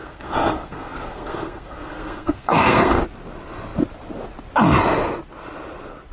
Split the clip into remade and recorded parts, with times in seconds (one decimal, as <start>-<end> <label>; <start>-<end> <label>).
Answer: 0.0-3.0 remade; 3.0-6.1 recorded